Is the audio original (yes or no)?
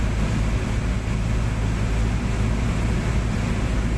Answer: yes